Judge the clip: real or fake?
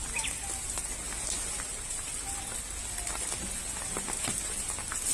real